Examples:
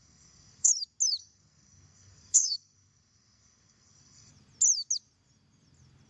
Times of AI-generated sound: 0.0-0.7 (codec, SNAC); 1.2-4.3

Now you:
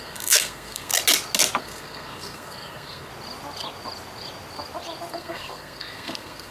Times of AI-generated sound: 0.0-0.9 (codec, SNAC); 1.6-3.1; 5.1-6.5

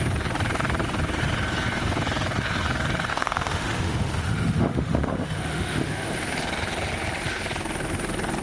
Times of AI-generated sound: 3.1-6.1 (autoencoder, DAC-VAE)

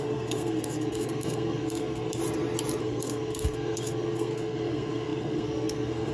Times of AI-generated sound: 0.0-2.2 (codec, SNAC); 2.8-6.1

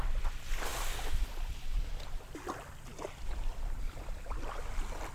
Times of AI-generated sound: none

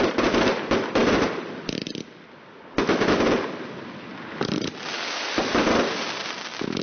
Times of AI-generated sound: none

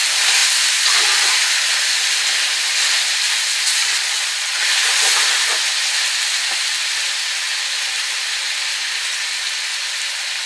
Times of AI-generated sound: 3.8-4.6 (vocoder, Vocos)